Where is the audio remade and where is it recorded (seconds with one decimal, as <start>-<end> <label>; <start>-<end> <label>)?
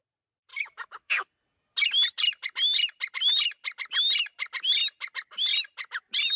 0.0-0.5 recorded; 0.5-1.1 remade; 1.1-6.4 recorded